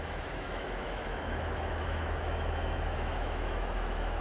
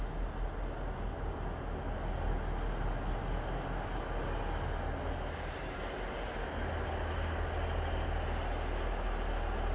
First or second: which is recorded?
second